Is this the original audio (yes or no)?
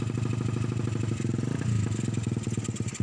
yes